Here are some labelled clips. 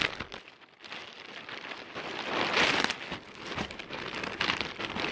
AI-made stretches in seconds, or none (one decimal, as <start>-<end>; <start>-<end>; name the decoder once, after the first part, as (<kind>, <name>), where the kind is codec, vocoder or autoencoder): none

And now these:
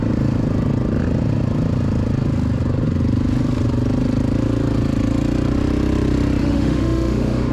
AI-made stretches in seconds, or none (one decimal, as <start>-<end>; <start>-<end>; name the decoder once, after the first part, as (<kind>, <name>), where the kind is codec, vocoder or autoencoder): 6.4-7.5 (autoencoder, DAC-VAE)

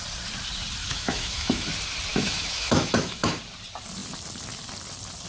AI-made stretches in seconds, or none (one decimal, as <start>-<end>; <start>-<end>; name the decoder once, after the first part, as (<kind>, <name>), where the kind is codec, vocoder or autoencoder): 0.8-1.7 (autoencoder, DAC-VAE); 2.1-3.4

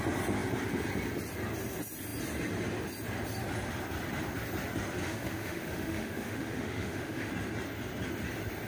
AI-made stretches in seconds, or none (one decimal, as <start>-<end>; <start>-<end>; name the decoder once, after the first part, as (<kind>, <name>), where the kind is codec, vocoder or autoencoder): 5.0-7.3 (autoencoder, DAC-VAE)

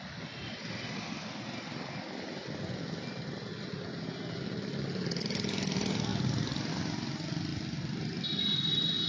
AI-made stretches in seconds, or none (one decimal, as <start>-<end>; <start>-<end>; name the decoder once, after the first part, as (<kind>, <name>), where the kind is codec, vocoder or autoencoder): none

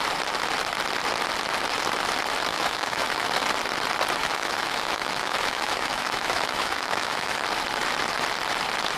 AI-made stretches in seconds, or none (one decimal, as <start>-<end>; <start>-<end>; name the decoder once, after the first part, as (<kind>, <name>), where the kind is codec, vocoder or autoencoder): 2.5-3.3 (autoencoder, DAC-VAE); 4.2-7.4

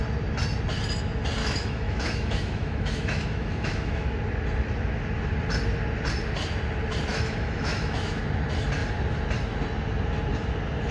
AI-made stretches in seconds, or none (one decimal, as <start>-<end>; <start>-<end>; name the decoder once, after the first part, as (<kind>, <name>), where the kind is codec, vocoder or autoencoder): 1.4-4.2 (autoencoder, DAC-VAE); 7.1-8.2